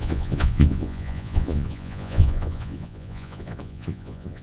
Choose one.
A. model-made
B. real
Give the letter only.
A